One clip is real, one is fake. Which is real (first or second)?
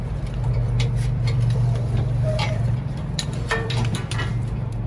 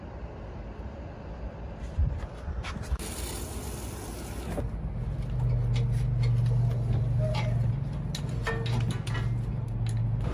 second